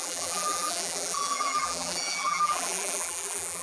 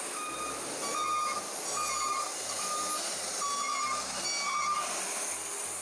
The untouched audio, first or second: second